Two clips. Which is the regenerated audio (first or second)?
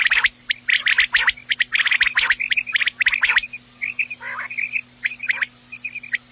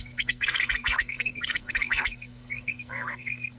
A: second